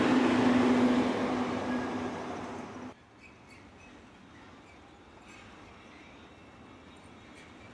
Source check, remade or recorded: recorded